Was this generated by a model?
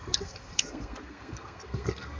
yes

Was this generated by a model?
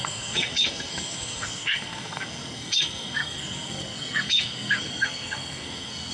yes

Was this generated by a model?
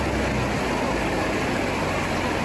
no